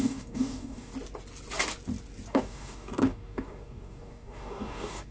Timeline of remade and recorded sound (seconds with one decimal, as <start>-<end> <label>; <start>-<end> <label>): 0.0-0.9 remade; 0.9-2.3 recorded; 2.3-5.1 remade

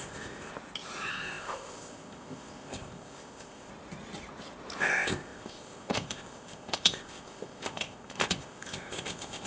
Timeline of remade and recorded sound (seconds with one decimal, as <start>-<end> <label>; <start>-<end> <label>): 0.0-0.5 remade; 0.5-1.1 recorded; 1.1-3.7 remade; 3.7-4.8 recorded; 4.8-9.5 remade

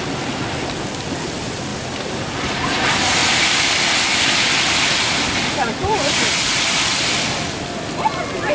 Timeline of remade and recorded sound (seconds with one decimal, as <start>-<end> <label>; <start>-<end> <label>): 0.0-1.7 recorded; 1.7-2.5 remade; 2.5-5.8 recorded; 5.8-6.3 remade; 6.3-8.5 recorded